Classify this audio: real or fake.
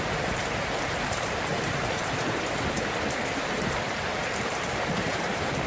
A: fake